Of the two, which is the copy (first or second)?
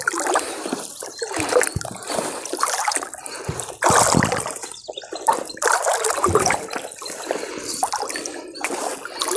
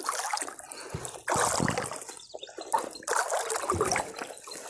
first